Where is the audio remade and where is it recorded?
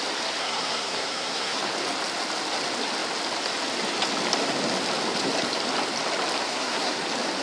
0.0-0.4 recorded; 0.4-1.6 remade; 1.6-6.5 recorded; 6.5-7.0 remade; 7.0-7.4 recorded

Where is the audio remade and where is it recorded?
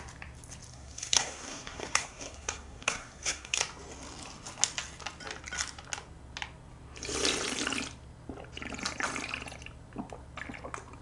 0.0-0.7 recorded; 0.7-3.6 remade; 3.6-11.0 recorded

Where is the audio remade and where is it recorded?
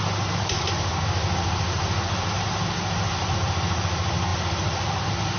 0.0-5.4 recorded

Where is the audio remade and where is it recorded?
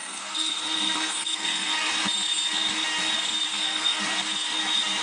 0.0-1.9 remade; 1.9-3.5 recorded; 3.5-4.0 remade; 4.0-5.0 recorded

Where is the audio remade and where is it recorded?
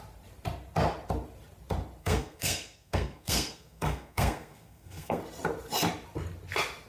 0.0-2.0 recorded; 2.0-5.2 remade; 5.2-6.9 recorded